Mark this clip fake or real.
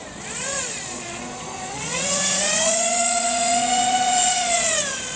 fake